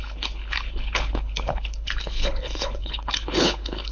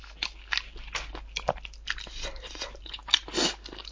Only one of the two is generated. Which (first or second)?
first